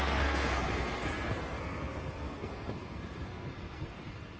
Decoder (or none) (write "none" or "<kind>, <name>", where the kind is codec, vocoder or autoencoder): codec, SNAC